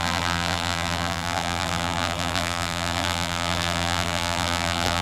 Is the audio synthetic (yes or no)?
yes